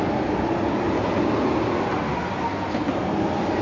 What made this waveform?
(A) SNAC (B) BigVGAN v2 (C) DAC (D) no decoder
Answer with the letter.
D